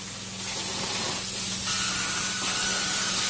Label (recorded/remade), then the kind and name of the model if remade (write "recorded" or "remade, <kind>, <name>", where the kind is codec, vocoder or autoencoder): recorded